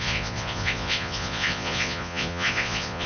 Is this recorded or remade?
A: remade